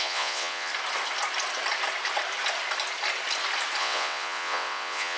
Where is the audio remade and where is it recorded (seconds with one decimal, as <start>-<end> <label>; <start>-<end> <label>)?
0.0-0.7 remade; 0.7-3.8 recorded; 3.8-5.2 remade